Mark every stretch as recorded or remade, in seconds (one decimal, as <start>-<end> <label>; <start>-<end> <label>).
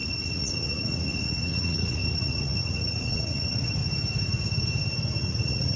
0.0-3.8 remade; 3.8-5.2 recorded; 5.2-5.8 remade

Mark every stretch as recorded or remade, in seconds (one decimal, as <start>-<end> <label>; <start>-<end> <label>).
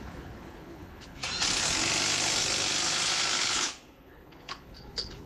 0.0-1.2 remade; 1.2-3.4 recorded; 3.4-5.3 remade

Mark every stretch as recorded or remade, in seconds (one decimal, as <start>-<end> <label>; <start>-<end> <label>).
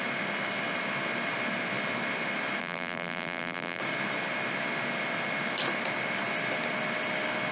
0.0-2.6 recorded; 2.6-3.8 remade; 3.8-7.5 recorded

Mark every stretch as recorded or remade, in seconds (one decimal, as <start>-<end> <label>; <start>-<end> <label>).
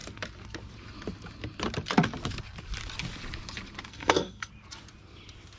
0.0-3.9 recorded; 3.9-4.5 remade; 4.5-5.6 recorded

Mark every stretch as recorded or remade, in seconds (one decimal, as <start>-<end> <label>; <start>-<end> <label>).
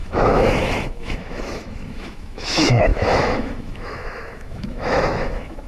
0.0-5.7 remade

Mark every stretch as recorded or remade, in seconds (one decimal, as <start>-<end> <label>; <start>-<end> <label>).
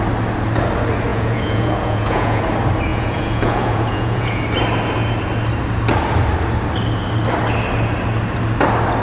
0.0-1.1 recorded; 1.1-2.4 remade; 2.4-2.9 recorded; 2.9-4.4 remade; 4.4-9.0 recorded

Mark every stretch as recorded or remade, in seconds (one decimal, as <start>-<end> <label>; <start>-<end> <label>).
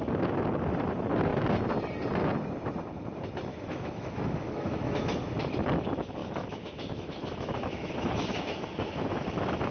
0.0-3.5 recorded; 3.5-5.3 remade; 5.3-6.2 recorded; 6.2-9.7 remade